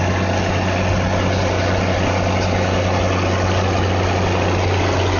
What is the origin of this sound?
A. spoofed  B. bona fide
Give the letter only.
B